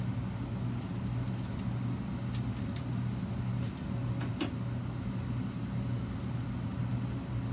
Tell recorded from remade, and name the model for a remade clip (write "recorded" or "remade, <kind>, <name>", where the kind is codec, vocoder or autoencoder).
recorded